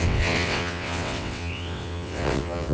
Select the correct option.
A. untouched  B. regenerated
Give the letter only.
B